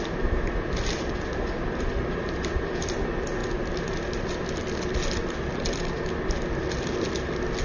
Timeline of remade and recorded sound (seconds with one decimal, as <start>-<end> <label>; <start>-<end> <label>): 0.0-7.6 recorded